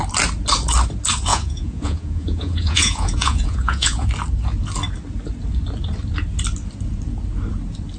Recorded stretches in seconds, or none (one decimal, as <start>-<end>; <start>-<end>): 0.0-1.3; 4.1-8.0